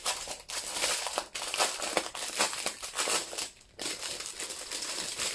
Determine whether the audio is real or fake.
fake